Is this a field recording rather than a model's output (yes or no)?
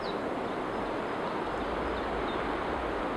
yes